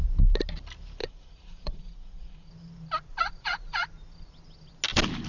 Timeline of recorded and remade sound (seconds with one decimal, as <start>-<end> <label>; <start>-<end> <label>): 0.0-1.0 recorded; 1.0-2.5 remade; 2.5-3.1 recorded; 3.1-3.8 remade; 3.8-5.3 recorded